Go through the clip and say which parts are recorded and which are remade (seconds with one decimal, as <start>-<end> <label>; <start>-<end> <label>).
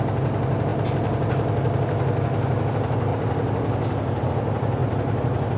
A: 0.0-3.1 recorded; 3.1-4.3 remade; 4.3-4.8 recorded; 4.8-5.6 remade